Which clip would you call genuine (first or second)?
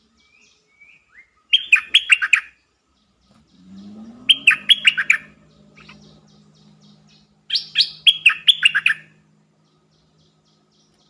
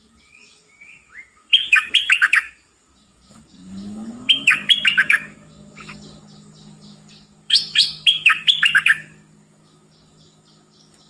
first